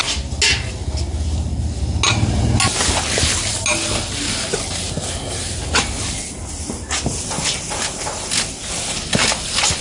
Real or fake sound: real